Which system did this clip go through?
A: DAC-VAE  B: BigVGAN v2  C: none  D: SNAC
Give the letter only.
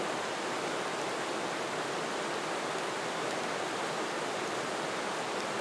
C